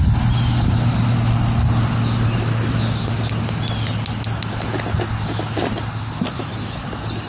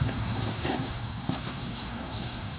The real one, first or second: first